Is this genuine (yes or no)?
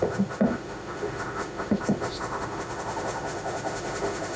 no